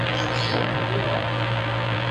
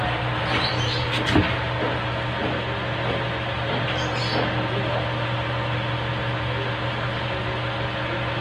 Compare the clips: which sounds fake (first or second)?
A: first